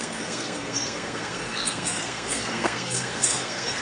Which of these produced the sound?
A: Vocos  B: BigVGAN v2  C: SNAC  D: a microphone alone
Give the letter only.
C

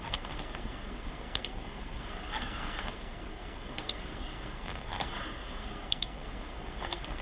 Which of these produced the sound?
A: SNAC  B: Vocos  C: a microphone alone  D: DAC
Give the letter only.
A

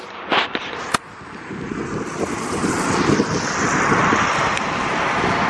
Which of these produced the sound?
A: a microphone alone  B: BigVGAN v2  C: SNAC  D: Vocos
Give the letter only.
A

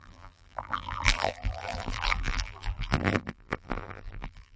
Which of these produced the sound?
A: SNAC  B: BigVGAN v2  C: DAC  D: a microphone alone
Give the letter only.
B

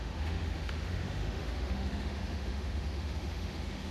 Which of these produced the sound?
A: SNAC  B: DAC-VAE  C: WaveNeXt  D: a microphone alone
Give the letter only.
B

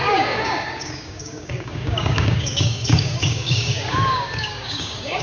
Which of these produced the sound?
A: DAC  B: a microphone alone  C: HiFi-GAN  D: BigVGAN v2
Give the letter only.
A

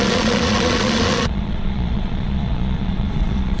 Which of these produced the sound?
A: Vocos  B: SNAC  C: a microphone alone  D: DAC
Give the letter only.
A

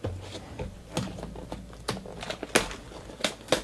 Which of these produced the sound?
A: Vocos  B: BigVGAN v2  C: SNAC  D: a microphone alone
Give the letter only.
D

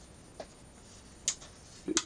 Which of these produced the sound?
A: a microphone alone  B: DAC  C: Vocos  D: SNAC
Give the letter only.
A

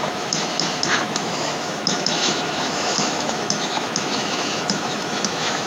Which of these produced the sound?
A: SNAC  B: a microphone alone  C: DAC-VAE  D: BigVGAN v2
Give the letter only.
C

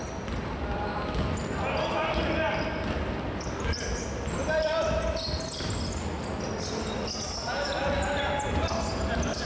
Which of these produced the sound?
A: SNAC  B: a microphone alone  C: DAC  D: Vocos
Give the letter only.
B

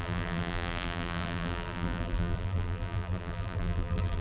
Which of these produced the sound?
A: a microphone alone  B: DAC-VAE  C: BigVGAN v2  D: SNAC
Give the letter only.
C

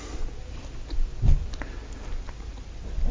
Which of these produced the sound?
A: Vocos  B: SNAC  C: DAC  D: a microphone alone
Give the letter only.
D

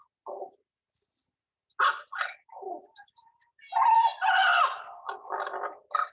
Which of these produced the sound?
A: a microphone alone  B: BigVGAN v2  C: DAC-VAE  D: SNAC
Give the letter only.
A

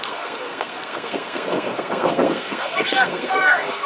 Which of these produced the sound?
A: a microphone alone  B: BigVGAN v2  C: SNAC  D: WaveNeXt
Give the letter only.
C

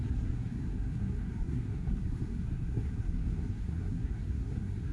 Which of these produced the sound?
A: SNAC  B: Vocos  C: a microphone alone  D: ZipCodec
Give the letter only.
A